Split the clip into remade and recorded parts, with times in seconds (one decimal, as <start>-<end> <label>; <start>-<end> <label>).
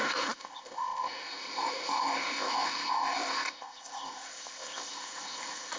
0.0-5.8 remade